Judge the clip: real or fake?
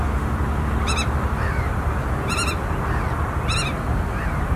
real